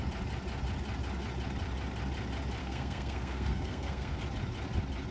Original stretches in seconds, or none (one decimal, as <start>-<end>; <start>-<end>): 0.0-2.6; 4.2-5.1